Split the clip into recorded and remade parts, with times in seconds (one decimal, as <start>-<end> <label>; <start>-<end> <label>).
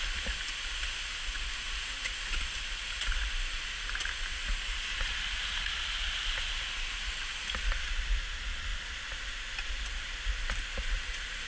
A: 0.0-8.7 recorded; 8.7-10.4 remade; 10.4-11.5 recorded